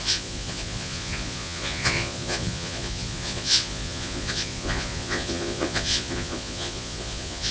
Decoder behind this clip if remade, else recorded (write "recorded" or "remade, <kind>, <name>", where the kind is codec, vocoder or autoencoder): remade, vocoder, Vocos